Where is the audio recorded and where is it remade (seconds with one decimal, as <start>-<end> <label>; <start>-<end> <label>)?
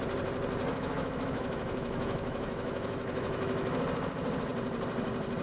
0.0-0.7 recorded; 0.7-3.8 remade; 3.8-5.4 recorded